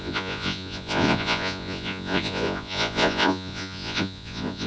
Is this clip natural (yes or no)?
no